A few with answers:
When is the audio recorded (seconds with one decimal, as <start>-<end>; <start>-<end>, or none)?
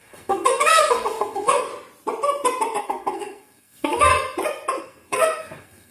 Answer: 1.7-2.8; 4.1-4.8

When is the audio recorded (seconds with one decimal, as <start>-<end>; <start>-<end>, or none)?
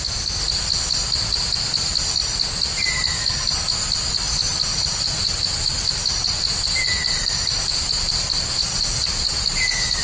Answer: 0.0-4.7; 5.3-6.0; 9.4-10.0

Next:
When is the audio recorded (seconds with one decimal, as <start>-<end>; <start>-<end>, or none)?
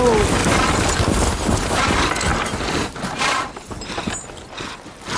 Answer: 0.0-2.3; 3.9-5.2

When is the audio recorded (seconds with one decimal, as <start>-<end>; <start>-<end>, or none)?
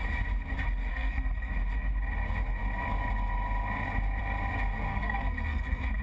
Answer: 0.0-0.9; 1.5-4.9